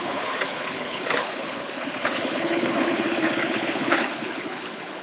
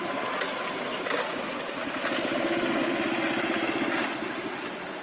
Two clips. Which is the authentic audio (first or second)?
second